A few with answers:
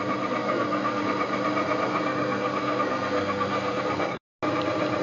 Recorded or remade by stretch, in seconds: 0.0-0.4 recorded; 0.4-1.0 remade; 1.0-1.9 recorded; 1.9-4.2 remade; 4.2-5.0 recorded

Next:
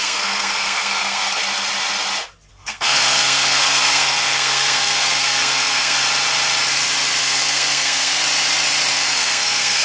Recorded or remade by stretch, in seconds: 0.0-1.4 remade; 1.4-2.5 recorded; 2.5-6.0 remade; 6.0-7.2 recorded; 7.2-8.2 remade; 8.2-8.9 recorded; 8.9-9.8 remade

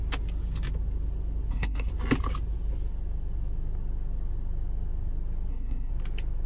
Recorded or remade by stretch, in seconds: 0.0-1.5 recorded; 1.5-1.9 remade; 1.9-5.5 recorded; 5.5-5.9 remade; 5.9-6.5 recorded